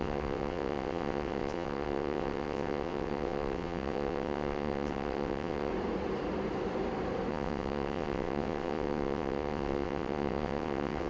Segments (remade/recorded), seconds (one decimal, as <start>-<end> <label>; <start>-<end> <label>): 0.0-5.7 remade; 5.7-7.3 recorded; 7.3-11.1 remade